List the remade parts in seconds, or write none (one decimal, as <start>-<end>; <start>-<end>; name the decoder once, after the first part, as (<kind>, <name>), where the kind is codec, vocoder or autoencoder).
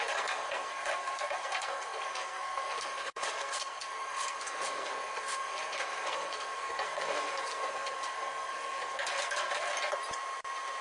0.0-9.7 (codec, SNAC)